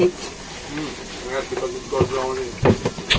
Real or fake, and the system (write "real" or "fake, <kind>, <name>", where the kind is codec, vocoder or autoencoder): real